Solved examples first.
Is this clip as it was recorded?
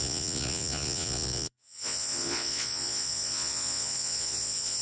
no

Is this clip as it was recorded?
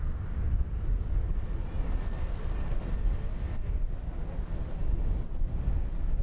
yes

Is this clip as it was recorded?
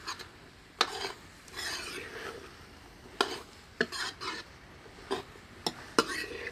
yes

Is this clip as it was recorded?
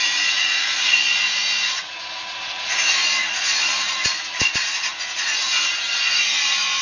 no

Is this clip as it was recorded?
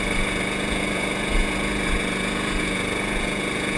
no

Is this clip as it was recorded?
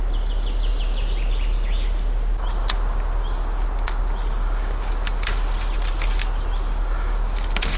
yes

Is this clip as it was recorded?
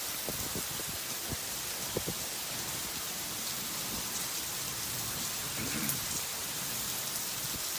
yes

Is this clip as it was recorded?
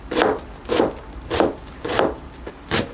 yes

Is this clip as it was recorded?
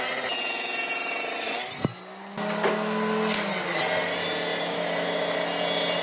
yes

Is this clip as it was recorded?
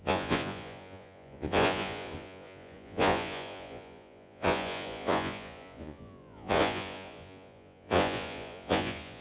no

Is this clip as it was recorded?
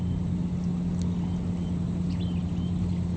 yes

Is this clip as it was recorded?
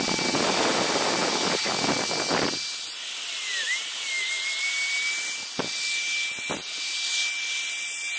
yes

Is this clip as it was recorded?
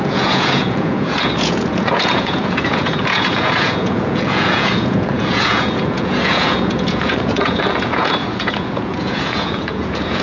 no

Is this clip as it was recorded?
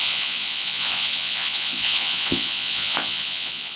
no